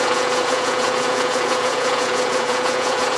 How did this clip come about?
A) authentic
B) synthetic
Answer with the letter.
B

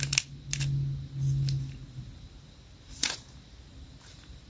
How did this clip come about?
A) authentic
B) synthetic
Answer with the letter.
A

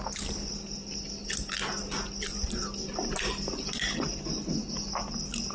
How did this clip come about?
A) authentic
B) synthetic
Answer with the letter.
A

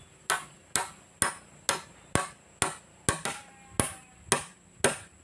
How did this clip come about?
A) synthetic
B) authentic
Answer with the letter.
B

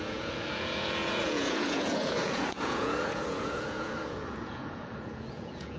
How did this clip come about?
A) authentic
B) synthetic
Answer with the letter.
B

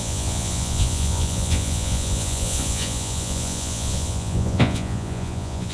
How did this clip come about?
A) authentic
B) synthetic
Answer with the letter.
B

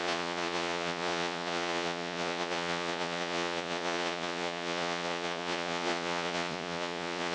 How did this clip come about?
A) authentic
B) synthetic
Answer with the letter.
B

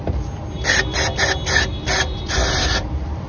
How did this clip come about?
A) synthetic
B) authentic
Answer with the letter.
B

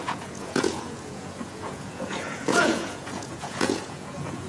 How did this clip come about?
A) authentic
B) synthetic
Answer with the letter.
B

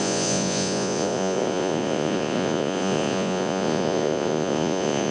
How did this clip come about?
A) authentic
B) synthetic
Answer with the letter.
B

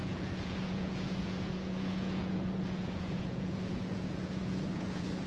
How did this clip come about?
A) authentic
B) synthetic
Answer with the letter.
B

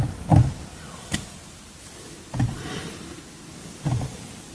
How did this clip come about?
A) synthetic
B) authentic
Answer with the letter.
B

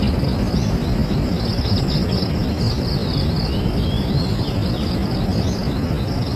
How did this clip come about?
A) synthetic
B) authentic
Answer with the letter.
B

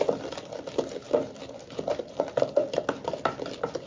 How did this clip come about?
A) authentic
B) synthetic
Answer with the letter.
A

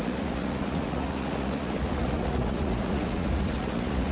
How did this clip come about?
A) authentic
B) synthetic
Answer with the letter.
B